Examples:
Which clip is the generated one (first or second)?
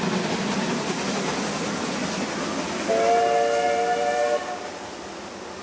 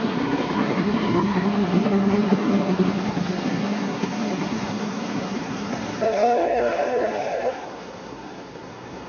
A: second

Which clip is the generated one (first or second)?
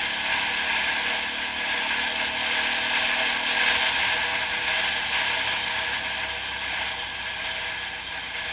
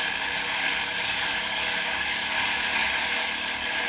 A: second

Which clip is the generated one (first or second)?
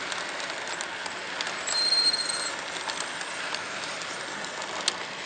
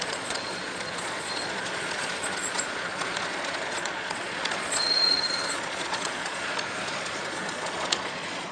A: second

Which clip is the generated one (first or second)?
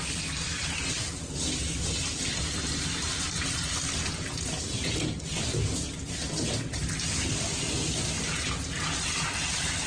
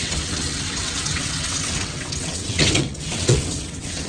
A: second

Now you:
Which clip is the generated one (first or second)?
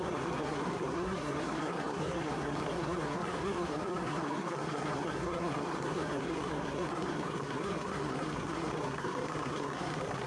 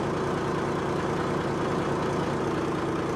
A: first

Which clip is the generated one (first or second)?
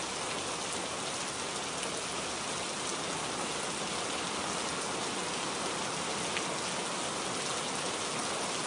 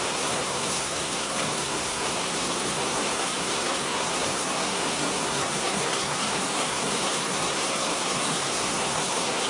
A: second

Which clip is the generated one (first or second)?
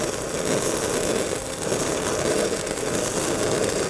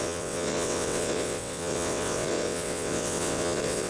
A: second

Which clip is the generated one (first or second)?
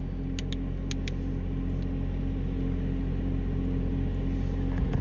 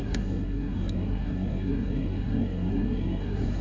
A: second